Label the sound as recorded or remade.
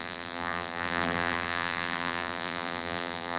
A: remade